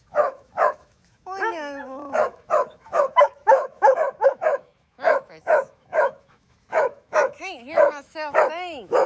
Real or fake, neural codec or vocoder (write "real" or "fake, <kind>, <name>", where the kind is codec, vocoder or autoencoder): fake, autoencoder, DAC-VAE